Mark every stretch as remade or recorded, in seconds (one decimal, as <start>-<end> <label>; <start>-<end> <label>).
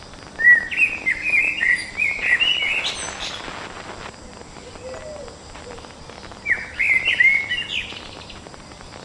0.0-9.0 recorded